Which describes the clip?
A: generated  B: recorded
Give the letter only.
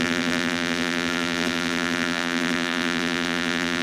A